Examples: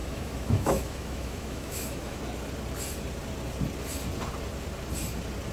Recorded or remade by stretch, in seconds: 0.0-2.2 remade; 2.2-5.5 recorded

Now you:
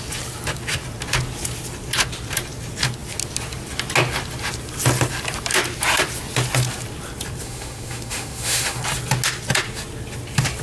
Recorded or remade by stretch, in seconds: 0.0-7.4 recorded; 7.4-8.8 remade; 8.8-10.6 recorded

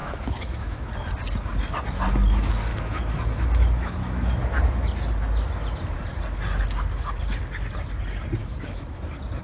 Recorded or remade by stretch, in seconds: 0.0-0.9 remade; 0.9-2.7 recorded; 2.7-4.3 remade; 4.3-8.4 recorded; 8.4-9.0 remade; 9.0-9.4 recorded

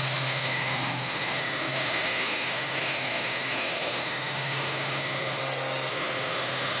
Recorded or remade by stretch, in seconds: 0.0-5.4 remade; 5.4-5.9 recorded; 5.9-6.8 remade

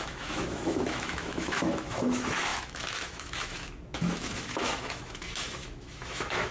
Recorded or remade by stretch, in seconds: 0.0-6.5 remade